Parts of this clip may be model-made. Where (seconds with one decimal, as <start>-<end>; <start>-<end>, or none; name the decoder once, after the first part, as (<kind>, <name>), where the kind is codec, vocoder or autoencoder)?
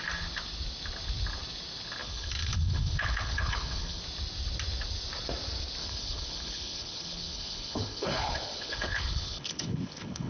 2.0-4.0 (codec, HILCodec); 5.8-10.3